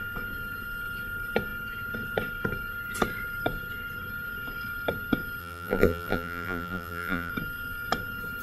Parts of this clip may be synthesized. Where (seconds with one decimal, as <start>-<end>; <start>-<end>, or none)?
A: 5.4-7.3